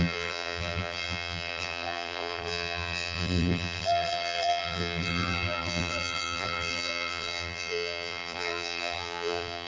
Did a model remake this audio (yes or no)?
yes